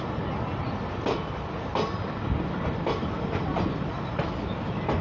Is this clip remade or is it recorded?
recorded